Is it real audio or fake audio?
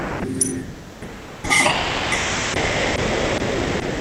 real